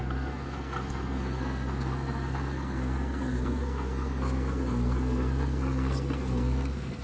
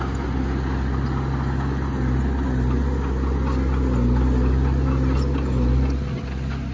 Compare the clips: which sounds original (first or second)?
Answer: second